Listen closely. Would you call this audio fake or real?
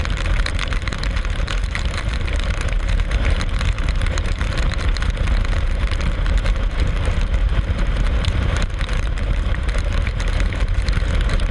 fake